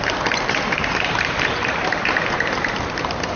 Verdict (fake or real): fake